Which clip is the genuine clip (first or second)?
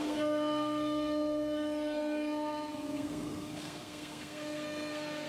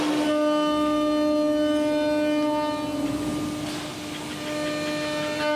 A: second